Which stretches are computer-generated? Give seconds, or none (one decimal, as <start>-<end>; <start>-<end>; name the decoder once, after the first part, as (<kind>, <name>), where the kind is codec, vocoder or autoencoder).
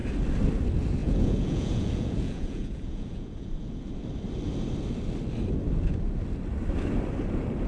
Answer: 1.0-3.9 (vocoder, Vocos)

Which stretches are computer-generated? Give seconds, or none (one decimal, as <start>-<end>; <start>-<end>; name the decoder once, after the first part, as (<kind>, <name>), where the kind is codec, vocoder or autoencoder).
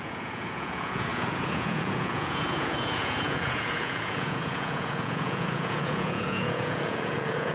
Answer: 0.0-7.5 (vocoder, Vocos)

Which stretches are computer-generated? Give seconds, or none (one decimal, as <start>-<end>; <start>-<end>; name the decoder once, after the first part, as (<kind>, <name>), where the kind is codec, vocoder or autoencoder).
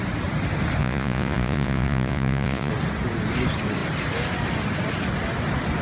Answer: 0.8-2.7 (vocoder, Vocos)